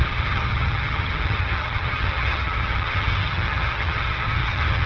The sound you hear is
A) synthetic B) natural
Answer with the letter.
A